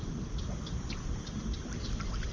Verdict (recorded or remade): recorded